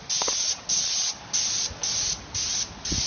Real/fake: real